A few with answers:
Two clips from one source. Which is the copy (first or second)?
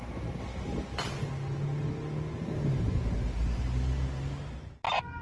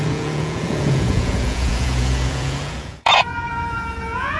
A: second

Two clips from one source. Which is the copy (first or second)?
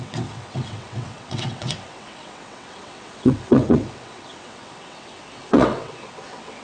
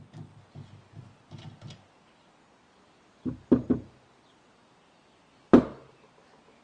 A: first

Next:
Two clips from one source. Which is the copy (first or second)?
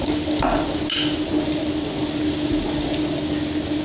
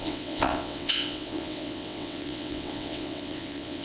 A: second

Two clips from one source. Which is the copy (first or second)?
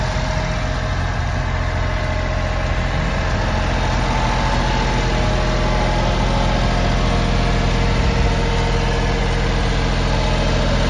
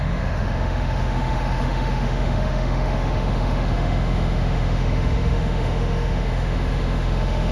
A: second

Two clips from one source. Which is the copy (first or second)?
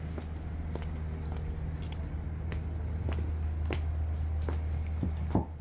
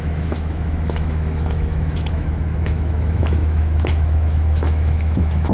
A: second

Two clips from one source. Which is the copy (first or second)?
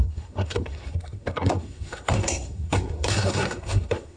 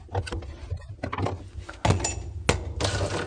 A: first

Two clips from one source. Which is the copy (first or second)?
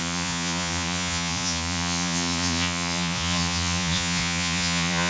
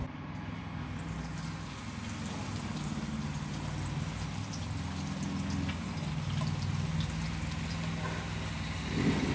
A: first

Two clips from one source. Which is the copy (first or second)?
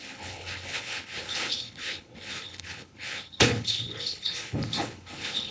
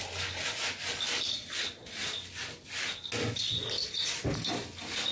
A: first